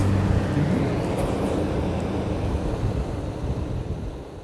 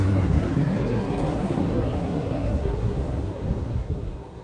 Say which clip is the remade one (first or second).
second